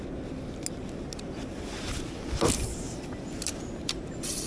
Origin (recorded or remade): recorded